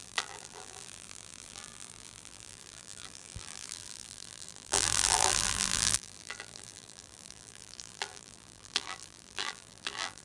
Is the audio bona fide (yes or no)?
no